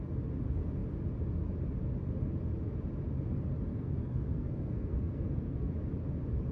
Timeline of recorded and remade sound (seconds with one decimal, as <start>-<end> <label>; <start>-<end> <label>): 0.0-3.7 recorded; 3.7-5.7 remade; 5.7-6.5 recorded